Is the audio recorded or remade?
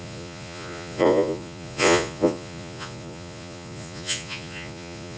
remade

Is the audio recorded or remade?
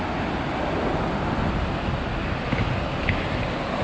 recorded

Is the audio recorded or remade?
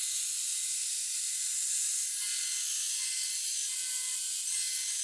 recorded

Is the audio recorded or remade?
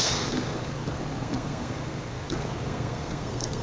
remade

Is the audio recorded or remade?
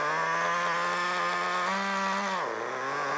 recorded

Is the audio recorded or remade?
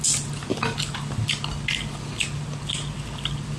recorded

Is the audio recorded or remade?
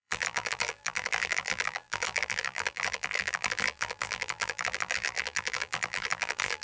remade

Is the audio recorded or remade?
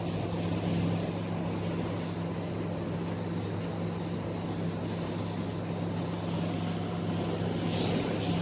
recorded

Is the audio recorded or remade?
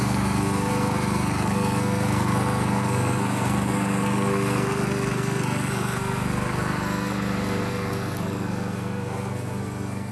remade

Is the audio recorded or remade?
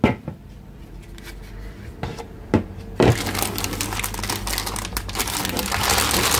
recorded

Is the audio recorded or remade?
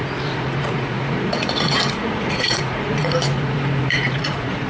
remade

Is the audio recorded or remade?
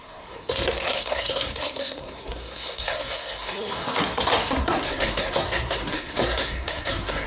remade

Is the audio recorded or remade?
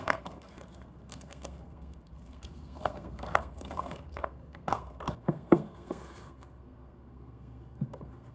remade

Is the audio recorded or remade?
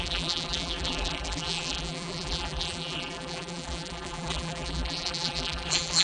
remade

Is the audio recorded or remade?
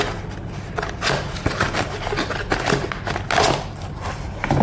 recorded